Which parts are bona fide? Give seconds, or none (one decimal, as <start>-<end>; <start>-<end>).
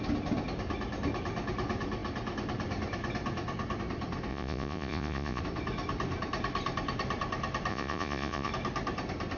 0.0-4.3; 5.4-7.7; 8.5-9.4